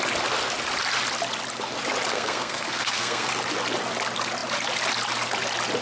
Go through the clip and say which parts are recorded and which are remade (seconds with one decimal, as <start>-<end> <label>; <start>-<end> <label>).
0.0-2.1 recorded; 2.1-3.3 remade; 3.3-5.8 recorded